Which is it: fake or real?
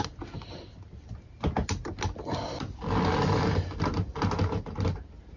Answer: real